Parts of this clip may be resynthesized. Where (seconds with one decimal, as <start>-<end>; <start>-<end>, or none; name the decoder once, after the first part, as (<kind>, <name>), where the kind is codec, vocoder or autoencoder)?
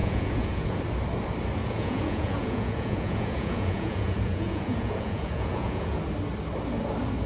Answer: 0.0-0.8 (vocoder, Vocos); 1.6-6.0